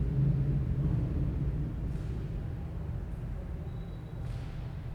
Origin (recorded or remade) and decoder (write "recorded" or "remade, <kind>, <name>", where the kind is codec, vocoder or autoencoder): recorded